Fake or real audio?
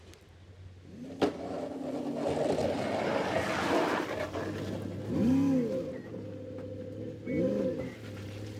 real